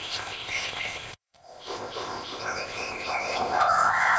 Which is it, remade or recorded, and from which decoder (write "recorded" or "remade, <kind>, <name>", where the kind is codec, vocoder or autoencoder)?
remade, codec, ZipCodec